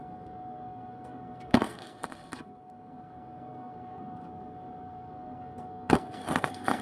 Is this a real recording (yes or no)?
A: no